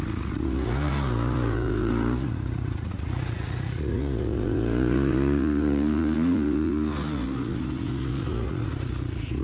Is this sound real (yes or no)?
no